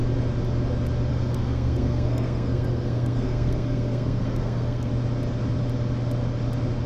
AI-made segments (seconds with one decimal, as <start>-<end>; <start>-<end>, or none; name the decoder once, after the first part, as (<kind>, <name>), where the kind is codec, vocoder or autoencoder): 1.1-4.9 (codec, SNAC)